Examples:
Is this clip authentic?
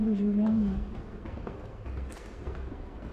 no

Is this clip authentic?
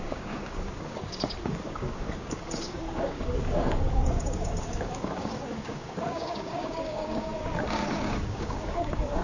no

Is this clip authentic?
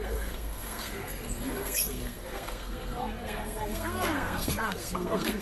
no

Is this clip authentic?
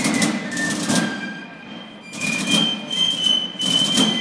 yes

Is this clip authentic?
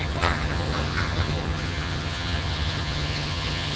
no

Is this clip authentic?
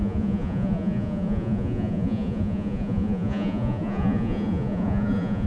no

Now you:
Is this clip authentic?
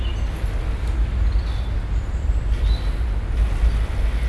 yes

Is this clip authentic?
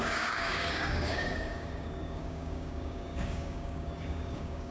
no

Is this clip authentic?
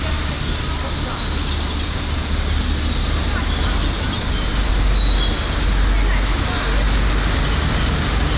yes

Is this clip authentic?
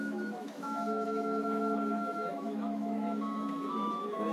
no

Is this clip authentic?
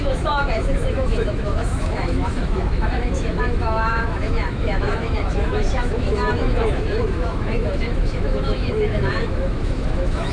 no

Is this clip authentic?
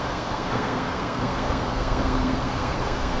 no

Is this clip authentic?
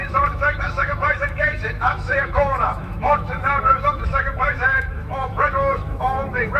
no